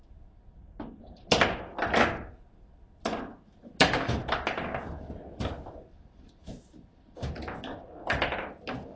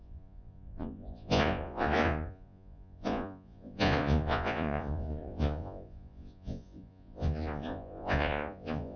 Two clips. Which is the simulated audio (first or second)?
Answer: second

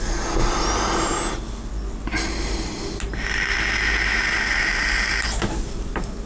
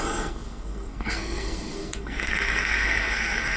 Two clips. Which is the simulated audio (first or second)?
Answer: second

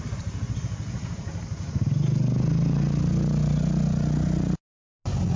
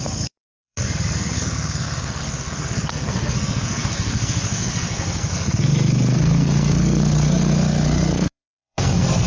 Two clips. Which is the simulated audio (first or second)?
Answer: second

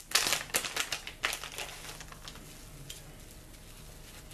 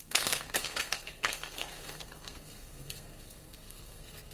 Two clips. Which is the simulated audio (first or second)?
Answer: second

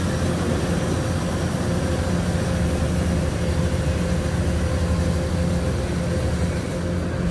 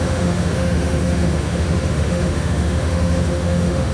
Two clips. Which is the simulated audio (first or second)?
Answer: second